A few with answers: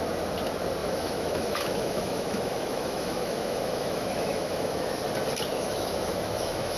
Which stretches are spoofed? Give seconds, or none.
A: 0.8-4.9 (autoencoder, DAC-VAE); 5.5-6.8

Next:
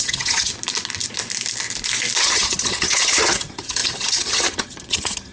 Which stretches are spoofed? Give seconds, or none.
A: 0.0-0.5 (vocoder, HiFi-GAN); 2.2-5.3

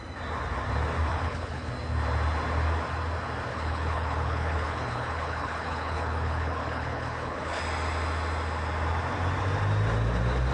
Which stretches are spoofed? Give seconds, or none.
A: 1.1-1.7 (codec, HILCodec); 3.5-7.6

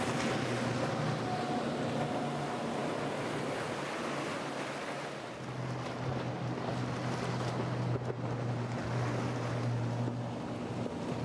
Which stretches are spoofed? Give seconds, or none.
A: none

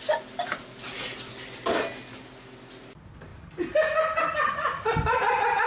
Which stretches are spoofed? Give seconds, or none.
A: none

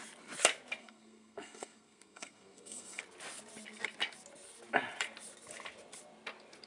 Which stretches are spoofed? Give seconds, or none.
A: 0.8-3.0 (codec, SNAC)